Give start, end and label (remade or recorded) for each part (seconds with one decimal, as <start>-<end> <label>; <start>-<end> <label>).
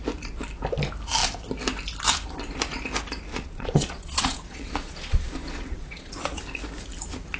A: 0.0-3.3 recorded; 3.3-6.4 remade; 6.4-7.4 recorded